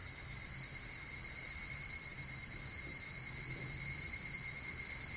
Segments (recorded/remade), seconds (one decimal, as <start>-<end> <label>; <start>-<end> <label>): 0.0-5.2 recorded